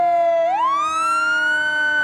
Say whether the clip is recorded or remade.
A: recorded